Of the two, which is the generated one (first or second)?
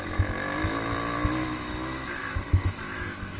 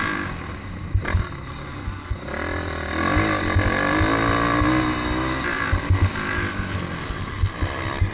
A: first